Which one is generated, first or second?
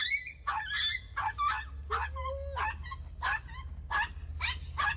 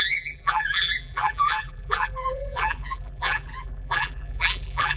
second